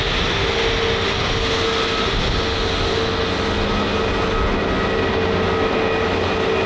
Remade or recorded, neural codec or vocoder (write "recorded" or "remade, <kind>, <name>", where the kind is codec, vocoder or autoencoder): recorded